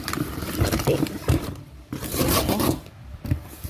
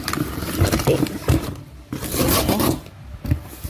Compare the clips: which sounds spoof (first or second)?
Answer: first